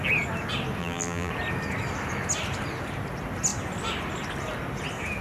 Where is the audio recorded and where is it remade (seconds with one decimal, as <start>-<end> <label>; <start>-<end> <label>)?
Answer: 0.0-0.8 recorded; 0.8-1.3 remade; 1.3-5.2 recorded